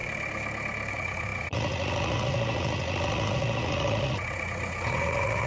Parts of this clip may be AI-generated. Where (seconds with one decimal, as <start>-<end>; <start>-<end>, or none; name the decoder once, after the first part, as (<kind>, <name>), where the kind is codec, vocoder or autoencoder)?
0.9-5.5 (vocoder, Vocos)